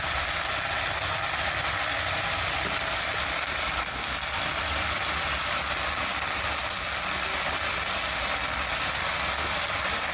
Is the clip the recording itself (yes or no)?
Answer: yes